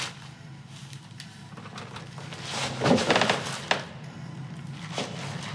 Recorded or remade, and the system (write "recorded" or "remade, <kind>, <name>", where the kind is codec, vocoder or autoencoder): recorded